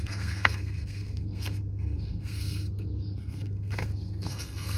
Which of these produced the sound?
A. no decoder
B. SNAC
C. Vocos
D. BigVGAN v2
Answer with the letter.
B